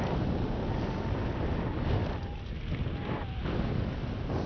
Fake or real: real